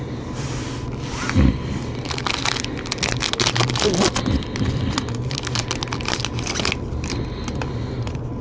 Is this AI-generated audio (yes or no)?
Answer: no